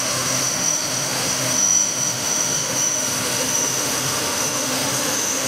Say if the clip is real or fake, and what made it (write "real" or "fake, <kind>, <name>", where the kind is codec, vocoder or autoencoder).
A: fake, autoencoder, DAC-VAE